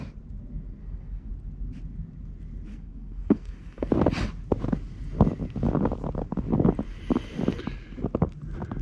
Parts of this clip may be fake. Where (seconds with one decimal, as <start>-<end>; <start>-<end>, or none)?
0.8-1.3; 2.7-3.9

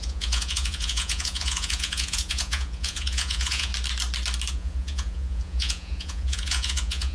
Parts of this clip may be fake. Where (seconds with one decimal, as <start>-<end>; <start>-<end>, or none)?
0.0-3.7; 4.5-7.1

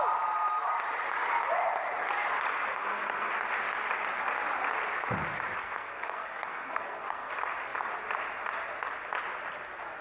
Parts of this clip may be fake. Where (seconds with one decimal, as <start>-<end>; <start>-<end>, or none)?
2.7-3.3; 5.6-7.3

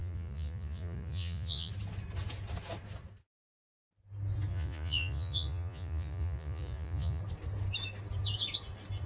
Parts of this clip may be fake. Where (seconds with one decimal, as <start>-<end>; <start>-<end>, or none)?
0.0-1.7; 4.5-7.2

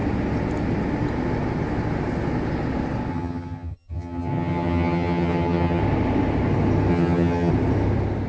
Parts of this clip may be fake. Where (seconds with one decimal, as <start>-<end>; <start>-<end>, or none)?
3.1-5.8; 6.9-7.5

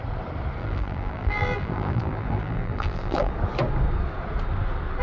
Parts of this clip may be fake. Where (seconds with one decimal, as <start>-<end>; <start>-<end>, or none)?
0.6-3.3

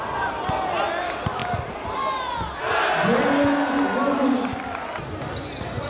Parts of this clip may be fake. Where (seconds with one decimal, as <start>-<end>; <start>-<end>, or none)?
none

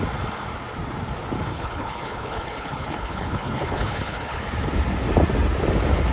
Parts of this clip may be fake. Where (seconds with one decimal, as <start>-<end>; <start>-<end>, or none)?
1.5-4.4